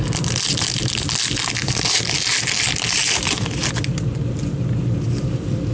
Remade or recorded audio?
recorded